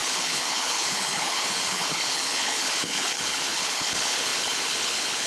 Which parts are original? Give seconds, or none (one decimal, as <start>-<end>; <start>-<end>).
none